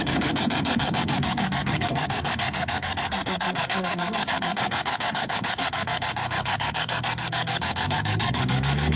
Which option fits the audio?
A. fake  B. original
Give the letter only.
A